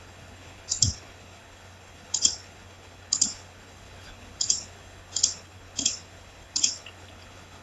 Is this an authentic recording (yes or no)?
no